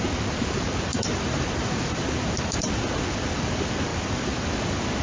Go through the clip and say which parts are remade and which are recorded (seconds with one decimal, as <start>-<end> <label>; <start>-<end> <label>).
0.0-0.9 recorded; 0.9-2.6 remade; 2.6-3.9 recorded; 3.9-4.5 remade; 4.5-5.0 recorded